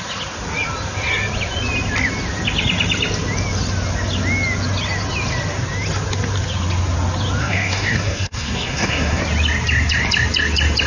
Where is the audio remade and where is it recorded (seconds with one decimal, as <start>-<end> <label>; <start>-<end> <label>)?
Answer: 0.0-7.4 recorded; 7.4-9.2 remade; 9.2-10.9 recorded